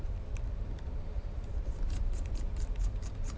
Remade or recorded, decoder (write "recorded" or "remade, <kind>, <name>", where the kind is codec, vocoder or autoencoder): remade, vocoder, BigVGAN v2